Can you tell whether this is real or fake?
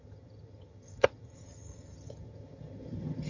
fake